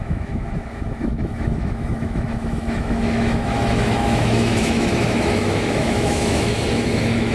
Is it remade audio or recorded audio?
remade